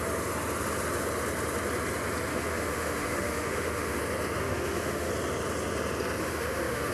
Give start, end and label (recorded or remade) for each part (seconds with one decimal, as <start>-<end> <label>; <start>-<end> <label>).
0.0-2.3 recorded; 2.3-4.0 remade; 4.0-4.4 recorded; 4.4-5.1 remade; 5.1-6.2 recorded; 6.2-6.9 remade